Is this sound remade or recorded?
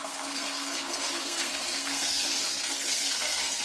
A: remade